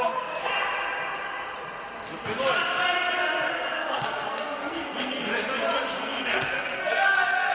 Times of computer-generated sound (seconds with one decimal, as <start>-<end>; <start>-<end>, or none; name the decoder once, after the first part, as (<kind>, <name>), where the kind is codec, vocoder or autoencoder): 0.0-0.5 (codec, SNAC); 3.5-5.3; 5.9-7.5